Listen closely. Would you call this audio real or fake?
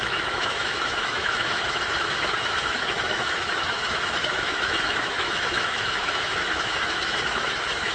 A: fake